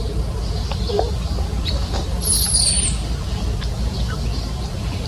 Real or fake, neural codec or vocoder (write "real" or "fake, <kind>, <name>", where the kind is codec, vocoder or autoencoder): real